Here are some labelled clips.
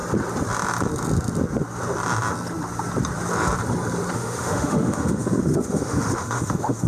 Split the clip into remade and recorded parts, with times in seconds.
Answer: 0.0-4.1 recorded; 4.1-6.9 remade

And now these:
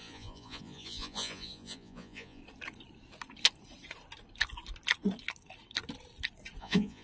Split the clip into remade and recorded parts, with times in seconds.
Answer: 0.0-2.4 remade; 2.4-6.6 recorded; 6.6-7.0 remade

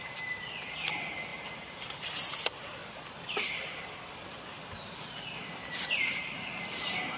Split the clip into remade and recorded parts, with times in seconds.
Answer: 0.0-1.3 recorded; 1.3-2.1 remade; 2.1-5.6 recorded; 5.6-7.2 remade

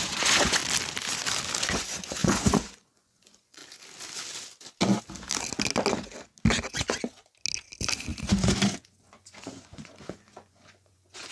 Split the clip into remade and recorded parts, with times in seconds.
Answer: 0.0-0.6 remade; 0.6-1.6 recorded; 1.6-3.6 remade; 3.6-8.2 recorded; 8.2-11.3 remade

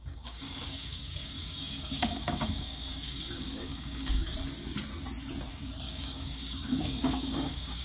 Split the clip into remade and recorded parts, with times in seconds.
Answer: 0.0-4.3 remade; 4.3-5.5 recorded; 5.5-7.8 remade